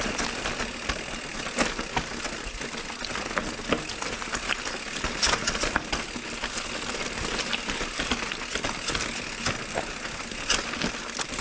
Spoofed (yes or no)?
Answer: no